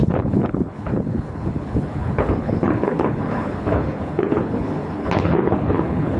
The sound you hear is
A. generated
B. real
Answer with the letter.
A